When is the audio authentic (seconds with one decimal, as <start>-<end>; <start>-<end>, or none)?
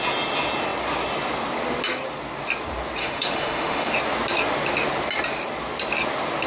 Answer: 0.0-3.0; 3.9-6.5